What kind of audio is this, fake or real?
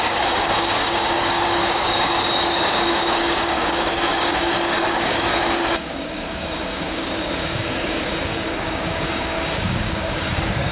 fake